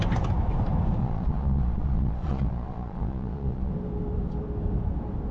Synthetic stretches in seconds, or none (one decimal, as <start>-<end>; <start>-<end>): 1.0-3.7